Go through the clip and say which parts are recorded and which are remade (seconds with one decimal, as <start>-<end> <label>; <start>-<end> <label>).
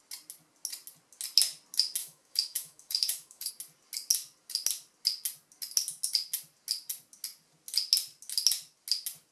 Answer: 0.0-2.0 recorded; 2.0-3.5 remade; 3.5-9.3 recorded